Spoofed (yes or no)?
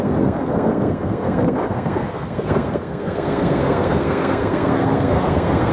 yes